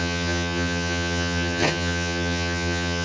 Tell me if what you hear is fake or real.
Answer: fake